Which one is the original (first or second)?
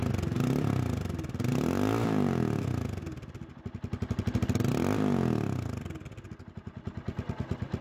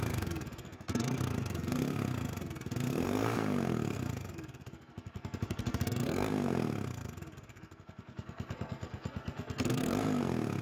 first